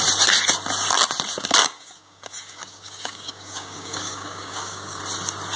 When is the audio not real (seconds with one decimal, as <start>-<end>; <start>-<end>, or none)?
1.6-5.0